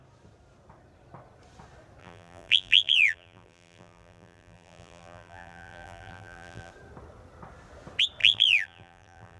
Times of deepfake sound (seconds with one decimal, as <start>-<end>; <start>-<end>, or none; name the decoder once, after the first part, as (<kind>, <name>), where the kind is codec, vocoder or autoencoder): 2.0-6.7 (vocoder, BigVGAN v2); 8.2-9.4